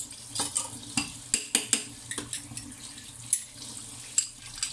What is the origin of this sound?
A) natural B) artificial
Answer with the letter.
A